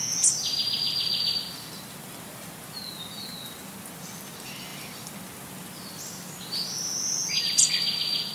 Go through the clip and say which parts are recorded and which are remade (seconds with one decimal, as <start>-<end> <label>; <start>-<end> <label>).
0.0-8.3 recorded